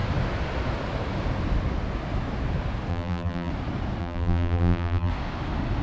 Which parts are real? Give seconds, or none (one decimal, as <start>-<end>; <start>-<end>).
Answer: 0.0-2.9; 3.5-4.0; 5.1-5.8

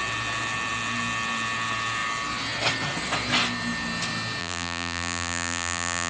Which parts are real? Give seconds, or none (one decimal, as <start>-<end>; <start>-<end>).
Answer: 0.0-4.4

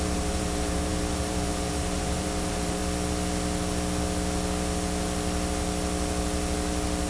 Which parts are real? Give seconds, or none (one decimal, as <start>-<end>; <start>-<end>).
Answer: 2.8-7.1

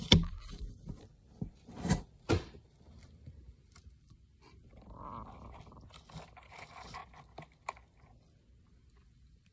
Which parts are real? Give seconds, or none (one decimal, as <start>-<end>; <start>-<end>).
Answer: 3.8-6.6; 7.0-8.7